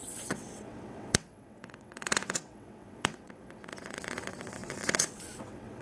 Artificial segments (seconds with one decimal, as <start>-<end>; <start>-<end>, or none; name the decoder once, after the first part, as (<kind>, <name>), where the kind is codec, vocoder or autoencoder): 0.0-5.8 (vocoder, WaveNeXt)